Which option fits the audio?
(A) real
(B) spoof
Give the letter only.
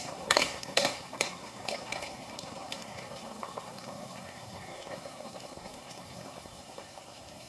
B